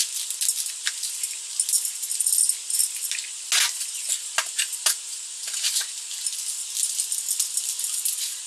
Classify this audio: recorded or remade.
recorded